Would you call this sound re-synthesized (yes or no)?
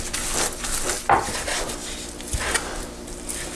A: no